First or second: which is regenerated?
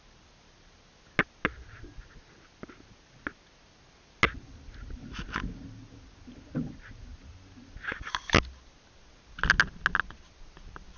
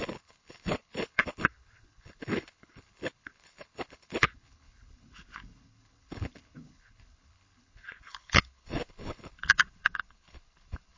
second